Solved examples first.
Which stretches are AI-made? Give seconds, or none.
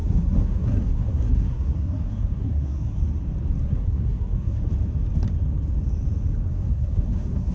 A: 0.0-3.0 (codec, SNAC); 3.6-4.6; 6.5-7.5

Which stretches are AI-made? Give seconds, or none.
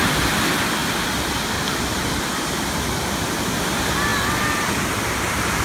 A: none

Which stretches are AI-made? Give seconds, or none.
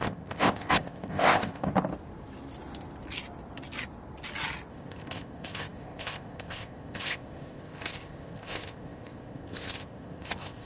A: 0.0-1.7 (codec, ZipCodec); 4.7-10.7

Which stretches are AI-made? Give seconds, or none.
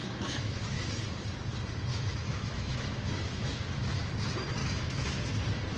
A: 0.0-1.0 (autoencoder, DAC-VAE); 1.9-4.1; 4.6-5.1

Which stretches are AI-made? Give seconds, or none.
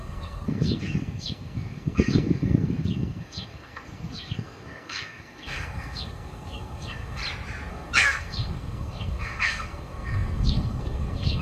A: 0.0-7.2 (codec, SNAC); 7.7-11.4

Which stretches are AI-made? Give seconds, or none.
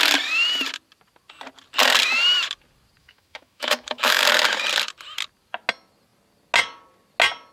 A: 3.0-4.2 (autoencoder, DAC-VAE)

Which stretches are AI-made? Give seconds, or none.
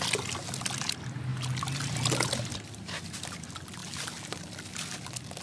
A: none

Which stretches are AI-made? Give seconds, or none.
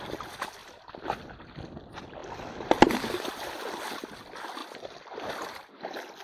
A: 4.6-5.7 (vocoder, BigVGAN v2)